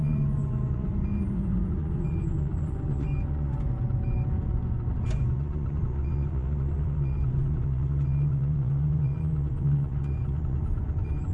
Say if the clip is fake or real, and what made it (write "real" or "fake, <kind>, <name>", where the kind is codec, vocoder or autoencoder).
fake, vocoder, Vocos